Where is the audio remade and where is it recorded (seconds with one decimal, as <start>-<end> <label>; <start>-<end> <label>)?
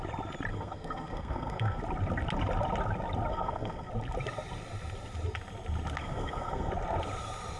0.0-0.5 recorded; 0.5-1.8 remade; 1.8-3.3 recorded; 3.3-3.9 remade; 3.9-6.0 recorded; 6.0-6.7 remade; 6.7-7.6 recorded